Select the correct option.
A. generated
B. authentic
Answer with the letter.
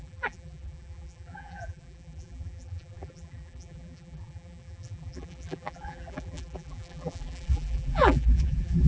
A